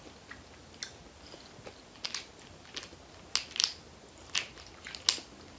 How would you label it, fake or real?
real